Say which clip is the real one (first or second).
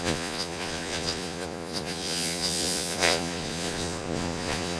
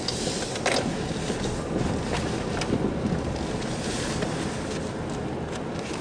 second